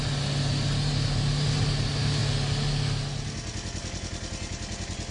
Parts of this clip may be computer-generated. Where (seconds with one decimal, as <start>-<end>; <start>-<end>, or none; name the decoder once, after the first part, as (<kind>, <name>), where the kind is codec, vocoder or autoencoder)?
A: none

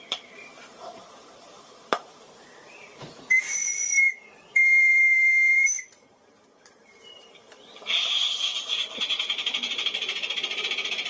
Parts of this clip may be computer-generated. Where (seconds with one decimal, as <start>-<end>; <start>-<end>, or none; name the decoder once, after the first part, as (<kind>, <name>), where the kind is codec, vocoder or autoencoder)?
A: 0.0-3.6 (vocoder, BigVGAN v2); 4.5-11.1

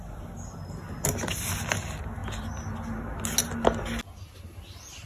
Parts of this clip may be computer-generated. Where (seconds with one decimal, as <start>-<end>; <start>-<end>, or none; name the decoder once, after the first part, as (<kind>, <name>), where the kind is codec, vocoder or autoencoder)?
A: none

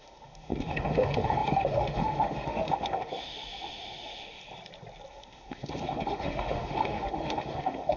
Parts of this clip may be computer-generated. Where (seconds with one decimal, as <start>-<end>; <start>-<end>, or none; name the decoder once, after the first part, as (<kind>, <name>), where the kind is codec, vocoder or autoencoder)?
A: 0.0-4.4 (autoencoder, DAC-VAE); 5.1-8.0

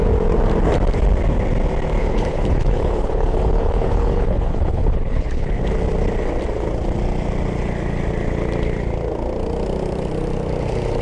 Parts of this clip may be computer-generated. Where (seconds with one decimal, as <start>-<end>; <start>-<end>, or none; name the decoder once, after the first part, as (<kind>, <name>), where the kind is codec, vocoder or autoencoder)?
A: 2.0-5.6 (codec, HILCodec)

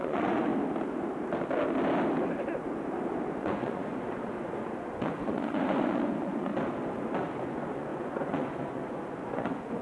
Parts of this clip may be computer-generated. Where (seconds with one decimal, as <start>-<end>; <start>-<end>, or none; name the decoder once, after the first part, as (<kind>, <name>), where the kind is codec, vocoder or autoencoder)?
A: 0.0-0.5 (vocoder, Vocos); 3.4-6.5; 7.4-9.8

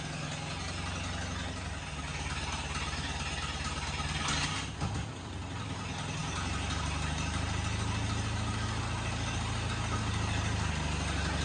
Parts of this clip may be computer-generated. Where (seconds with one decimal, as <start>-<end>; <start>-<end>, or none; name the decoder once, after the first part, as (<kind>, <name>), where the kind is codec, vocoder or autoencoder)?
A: none

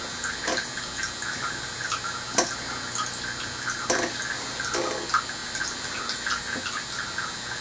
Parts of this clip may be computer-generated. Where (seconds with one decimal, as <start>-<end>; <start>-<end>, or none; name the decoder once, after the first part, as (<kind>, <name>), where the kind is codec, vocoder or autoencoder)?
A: none